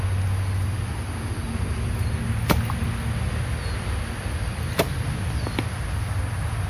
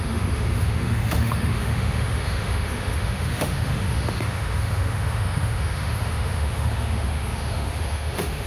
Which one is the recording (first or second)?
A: first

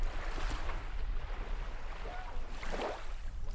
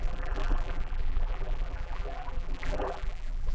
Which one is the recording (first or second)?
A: first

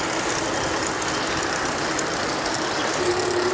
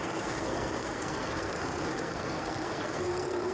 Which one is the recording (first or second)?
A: first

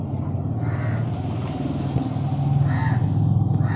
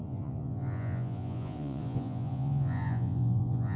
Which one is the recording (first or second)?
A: first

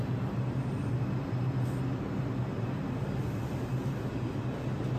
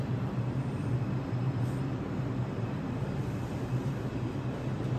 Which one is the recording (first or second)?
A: first